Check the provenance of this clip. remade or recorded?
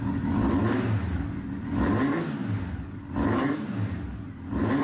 recorded